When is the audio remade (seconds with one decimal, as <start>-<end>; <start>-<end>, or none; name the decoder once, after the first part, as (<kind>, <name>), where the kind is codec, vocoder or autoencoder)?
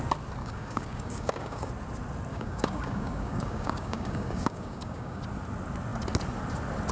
0.4-1.7 (codec, DAC); 2.3-5.2